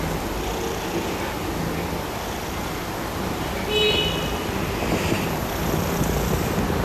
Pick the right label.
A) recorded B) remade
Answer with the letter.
A